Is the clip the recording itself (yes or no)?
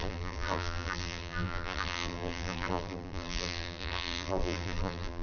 no